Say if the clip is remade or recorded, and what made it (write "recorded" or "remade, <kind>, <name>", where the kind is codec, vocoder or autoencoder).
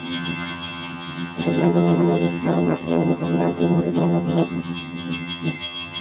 remade, vocoder, HiFi-GAN